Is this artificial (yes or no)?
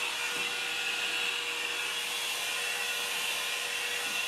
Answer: no